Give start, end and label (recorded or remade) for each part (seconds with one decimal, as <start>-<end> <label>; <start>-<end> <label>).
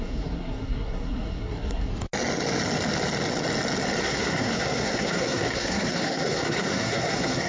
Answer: 0.0-1.9 remade; 1.9-4.0 recorded; 4.0-7.5 remade